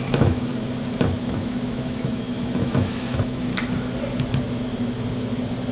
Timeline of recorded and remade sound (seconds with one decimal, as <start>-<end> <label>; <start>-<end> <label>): 0.0-0.5 remade; 0.5-1.1 recorded; 1.1-3.5 remade; 3.5-5.7 recorded